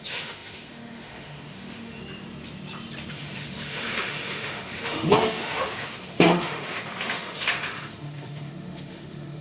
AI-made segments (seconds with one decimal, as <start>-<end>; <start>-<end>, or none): 0.0-2.0; 3.1-9.4